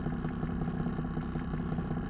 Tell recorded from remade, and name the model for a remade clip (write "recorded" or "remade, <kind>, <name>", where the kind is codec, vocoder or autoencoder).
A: recorded